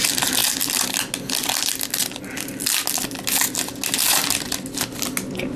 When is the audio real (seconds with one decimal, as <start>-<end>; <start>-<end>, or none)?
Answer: 0.0-5.6

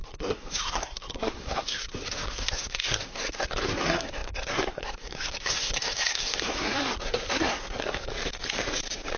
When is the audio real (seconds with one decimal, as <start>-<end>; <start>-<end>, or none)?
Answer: 8.1-9.2

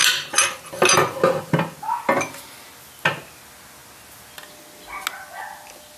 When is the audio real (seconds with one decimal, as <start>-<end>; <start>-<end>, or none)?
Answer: 0.0-6.0

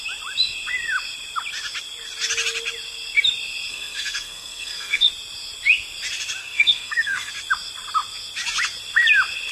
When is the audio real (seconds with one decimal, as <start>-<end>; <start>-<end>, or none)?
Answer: 0.0-3.7; 5.1-6.4; 7.3-9.5

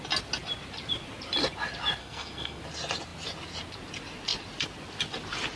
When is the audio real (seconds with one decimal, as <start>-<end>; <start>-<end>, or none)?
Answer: 0.0-2.0; 2.6-5.6

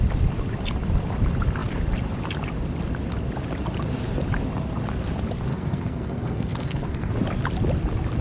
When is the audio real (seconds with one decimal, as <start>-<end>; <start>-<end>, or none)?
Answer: 0.0-5.5; 7.1-8.2

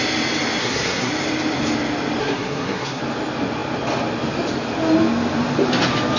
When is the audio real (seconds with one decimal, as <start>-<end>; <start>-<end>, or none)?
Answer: 0.0-0.6; 1.1-2.2; 3.0-6.2

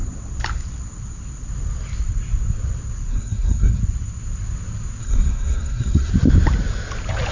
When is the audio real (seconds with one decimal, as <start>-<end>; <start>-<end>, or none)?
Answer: 0.0-3.1; 3.8-5.0; 6.1-7.3